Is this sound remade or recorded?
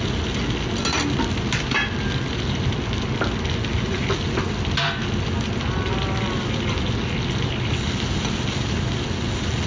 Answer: recorded